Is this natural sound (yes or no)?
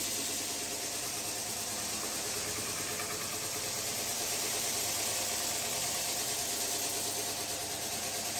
yes